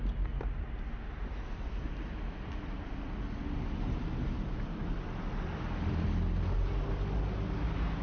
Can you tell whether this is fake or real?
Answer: real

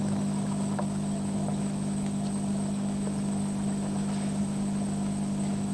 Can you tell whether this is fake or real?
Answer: fake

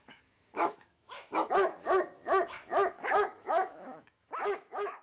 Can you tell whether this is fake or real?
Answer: fake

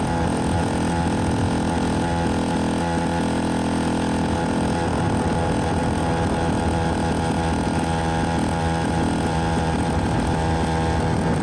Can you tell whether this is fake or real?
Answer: real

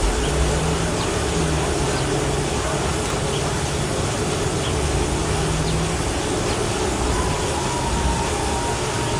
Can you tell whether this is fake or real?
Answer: real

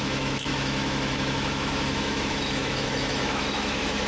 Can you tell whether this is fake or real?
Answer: fake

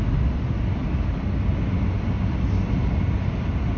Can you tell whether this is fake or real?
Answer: real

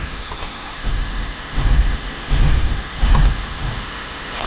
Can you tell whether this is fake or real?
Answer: fake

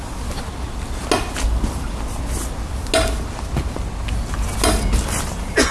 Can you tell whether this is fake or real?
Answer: real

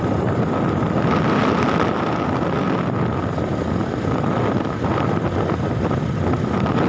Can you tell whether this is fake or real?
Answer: real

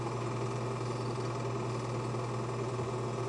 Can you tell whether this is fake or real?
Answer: real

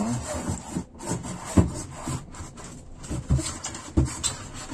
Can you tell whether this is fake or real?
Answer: real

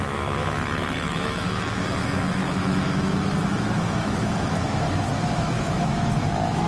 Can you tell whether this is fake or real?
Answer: fake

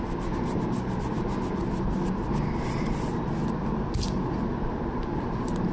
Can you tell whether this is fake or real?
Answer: real